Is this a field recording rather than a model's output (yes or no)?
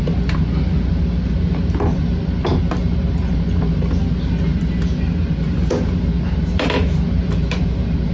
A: yes